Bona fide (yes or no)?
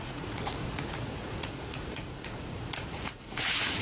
no